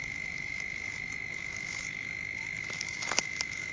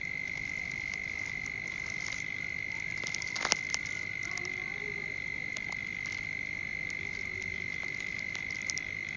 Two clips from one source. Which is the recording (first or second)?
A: second